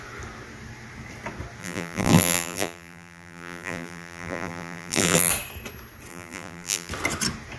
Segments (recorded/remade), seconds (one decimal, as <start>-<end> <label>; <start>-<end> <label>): 0.0-1.6 recorded; 1.6-5.3 remade; 5.3-6.1 recorded; 6.1-6.9 remade; 6.9-7.6 recorded